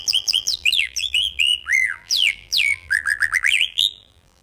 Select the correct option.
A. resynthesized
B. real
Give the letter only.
A